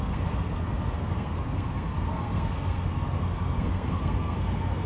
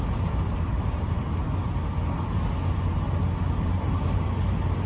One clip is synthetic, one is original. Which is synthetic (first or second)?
first